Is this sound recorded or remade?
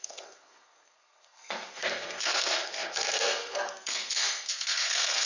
remade